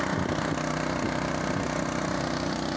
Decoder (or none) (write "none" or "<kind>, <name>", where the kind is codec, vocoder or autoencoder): none